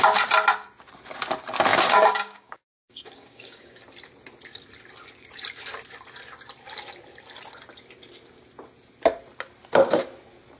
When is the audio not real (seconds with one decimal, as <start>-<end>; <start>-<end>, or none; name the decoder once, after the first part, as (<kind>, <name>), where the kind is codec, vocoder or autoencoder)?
1.7-3.8 (codec, DAC)